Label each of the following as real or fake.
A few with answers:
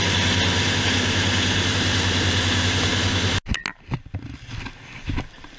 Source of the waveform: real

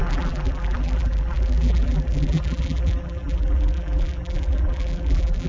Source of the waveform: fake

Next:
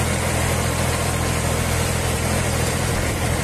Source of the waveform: fake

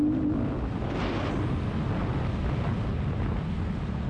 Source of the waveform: real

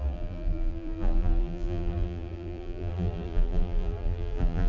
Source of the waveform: fake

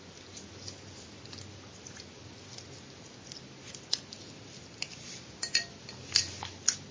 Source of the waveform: real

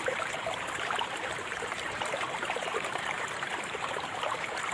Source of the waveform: fake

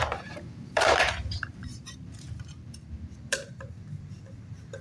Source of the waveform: fake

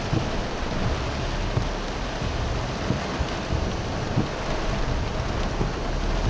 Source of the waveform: real